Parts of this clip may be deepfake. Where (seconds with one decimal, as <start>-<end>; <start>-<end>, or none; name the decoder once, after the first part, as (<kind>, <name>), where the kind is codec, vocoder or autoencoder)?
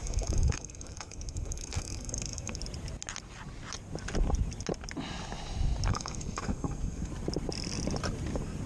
0.0-2.6 (codec, SNAC); 5.9-7.1